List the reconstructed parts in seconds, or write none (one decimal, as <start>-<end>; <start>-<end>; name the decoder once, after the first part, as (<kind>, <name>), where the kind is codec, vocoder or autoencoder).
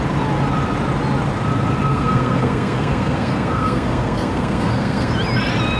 1.9-5.1 (codec, SNAC)